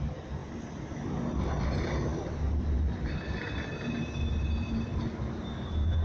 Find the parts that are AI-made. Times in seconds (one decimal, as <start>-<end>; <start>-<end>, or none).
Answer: none